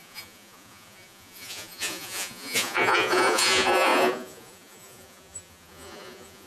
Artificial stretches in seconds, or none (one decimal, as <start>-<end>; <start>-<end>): 0.0-6.5